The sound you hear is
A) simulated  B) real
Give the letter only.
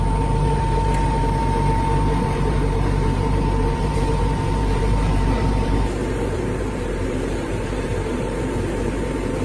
A